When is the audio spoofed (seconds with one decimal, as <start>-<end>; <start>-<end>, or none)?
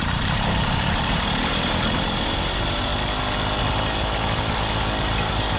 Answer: 0.0-2.9; 5.1-5.6